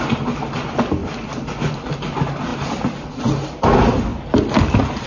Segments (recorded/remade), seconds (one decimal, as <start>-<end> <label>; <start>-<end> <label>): 0.0-1.0 recorded; 1.0-1.7 remade; 1.7-5.1 recorded